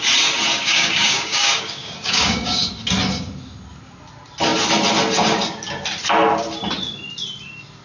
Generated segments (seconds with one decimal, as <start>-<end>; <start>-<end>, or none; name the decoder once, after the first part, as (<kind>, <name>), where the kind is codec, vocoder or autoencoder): 0.5-2.7 (codec, DAC)